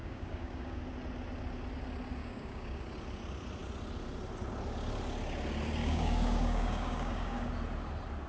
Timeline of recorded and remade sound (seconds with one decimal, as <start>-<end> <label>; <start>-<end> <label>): 0.0-0.8 remade; 0.8-2.2 recorded; 2.2-2.8 remade; 2.8-5.8 recorded; 5.8-7.5 remade; 7.5-8.3 recorded